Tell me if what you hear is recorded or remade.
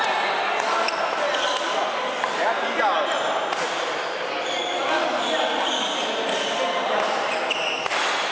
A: recorded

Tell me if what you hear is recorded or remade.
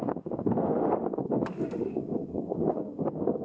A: remade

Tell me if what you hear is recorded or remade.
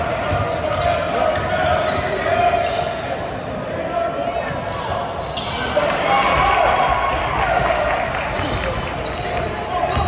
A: recorded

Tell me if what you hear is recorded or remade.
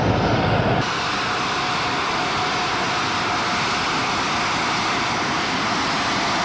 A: recorded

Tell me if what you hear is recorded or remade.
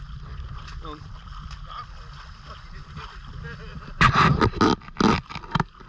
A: recorded